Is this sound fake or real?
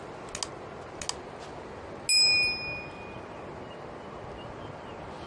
real